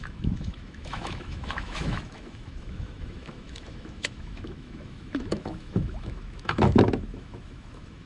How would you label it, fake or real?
fake